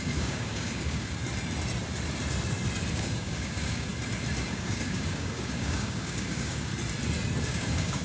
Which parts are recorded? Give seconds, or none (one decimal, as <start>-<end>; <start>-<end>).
1.2-2.9; 3.9-4.5; 6.7-7.4